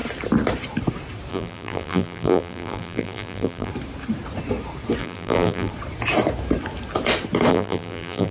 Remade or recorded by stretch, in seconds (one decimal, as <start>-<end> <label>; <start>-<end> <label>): 0.0-1.3 recorded; 1.3-3.7 remade; 3.7-5.0 recorded; 5.0-5.7 remade; 5.7-7.5 recorded; 7.5-8.3 remade